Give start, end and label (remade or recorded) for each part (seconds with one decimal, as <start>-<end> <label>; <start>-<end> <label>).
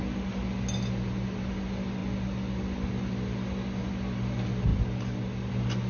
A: 0.0-5.9 recorded